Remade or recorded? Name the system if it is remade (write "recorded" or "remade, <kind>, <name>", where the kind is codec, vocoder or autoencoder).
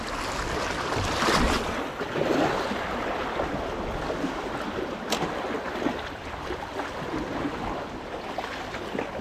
recorded